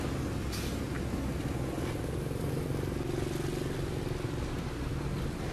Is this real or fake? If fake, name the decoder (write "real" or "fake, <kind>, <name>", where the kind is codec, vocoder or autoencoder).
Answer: real